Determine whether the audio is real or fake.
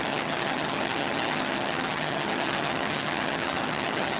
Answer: fake